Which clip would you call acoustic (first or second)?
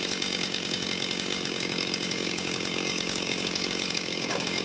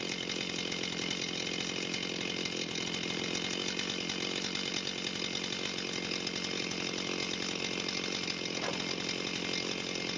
second